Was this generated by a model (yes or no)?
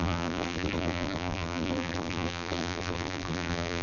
yes